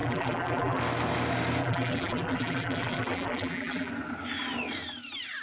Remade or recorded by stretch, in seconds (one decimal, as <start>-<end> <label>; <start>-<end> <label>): 0.0-0.8 remade; 0.8-1.6 recorded; 1.6-3.9 remade; 3.9-5.4 recorded